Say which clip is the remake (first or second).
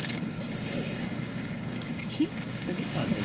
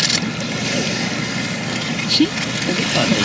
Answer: first